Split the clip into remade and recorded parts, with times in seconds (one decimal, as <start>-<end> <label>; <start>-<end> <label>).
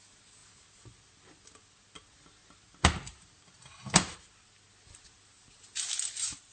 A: 0.0-6.5 recorded